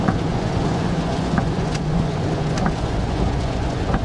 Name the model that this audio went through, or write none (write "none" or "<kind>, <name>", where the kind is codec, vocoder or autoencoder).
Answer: vocoder, Vocos